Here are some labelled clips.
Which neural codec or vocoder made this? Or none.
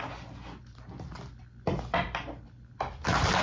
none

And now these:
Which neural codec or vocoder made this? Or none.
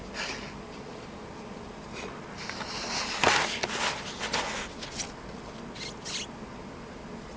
none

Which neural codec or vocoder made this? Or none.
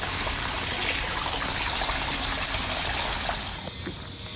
none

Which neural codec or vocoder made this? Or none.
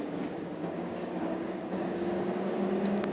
codec, DAC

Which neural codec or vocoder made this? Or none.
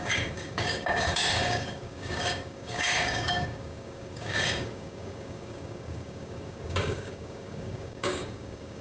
codec, DAC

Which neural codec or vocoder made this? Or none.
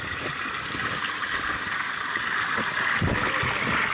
none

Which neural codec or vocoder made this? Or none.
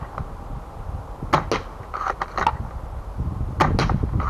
none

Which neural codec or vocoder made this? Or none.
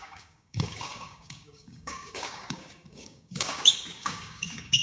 codec, DAC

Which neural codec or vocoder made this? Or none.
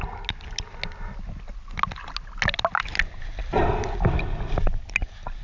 none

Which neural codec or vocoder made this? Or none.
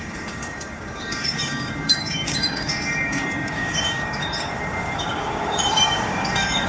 codec, DAC